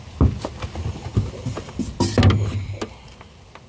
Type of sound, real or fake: real